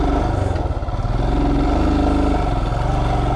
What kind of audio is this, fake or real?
real